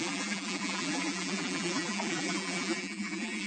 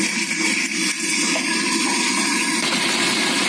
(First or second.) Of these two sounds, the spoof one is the first